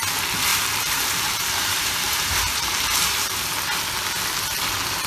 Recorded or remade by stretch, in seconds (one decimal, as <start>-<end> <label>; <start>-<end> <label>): 0.0-0.5 recorded; 0.5-3.6 remade; 3.6-5.1 recorded